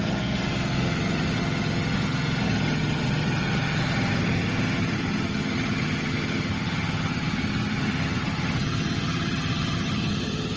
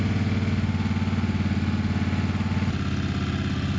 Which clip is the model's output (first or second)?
first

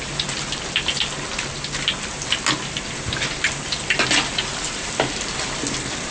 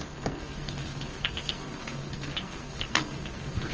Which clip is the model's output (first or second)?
second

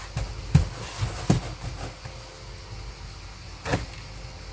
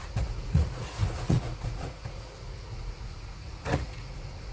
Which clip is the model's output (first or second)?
second